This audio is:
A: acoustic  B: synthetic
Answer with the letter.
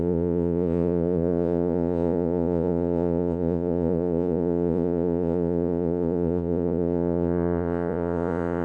B